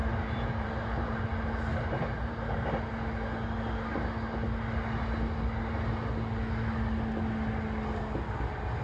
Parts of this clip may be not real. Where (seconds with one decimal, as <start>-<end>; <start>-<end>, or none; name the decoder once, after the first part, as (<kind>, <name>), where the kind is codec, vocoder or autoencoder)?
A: 0.0-1.2 (vocoder, BigVGAN v2); 1.7-2.7